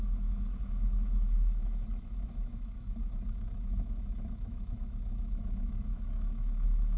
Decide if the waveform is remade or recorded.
remade